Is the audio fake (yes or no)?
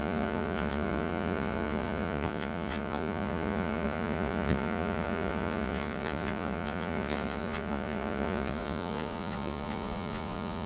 yes